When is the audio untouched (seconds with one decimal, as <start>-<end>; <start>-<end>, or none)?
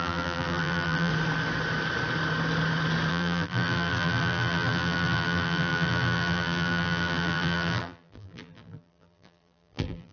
1.1-3.1